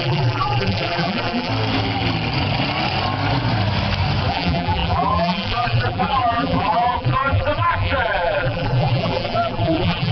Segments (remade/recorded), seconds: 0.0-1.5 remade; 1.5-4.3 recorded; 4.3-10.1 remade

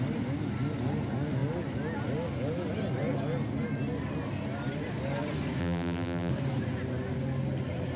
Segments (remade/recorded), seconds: 0.0-5.6 recorded; 5.6-6.3 remade; 6.3-8.0 recorded

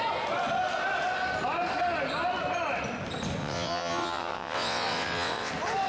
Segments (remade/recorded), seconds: 0.0-3.4 recorded; 3.4-5.5 remade; 5.5-5.9 recorded

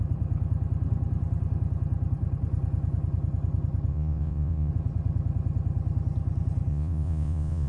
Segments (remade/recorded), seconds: 0.0-3.9 recorded; 3.9-4.7 remade; 4.7-6.7 recorded; 6.7-7.7 remade

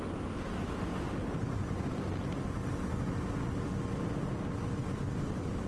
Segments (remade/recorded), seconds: 0.0-5.7 recorded

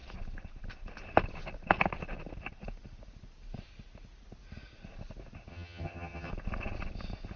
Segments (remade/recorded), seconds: 0.0-5.5 recorded; 5.5-6.3 remade; 6.3-7.4 recorded